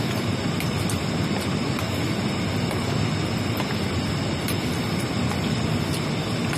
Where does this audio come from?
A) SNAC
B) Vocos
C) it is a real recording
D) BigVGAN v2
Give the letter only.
C